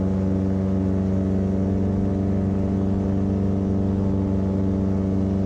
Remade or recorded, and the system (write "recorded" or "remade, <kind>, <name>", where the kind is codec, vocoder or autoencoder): recorded